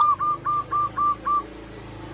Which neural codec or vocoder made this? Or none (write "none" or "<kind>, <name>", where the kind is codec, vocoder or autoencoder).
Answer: none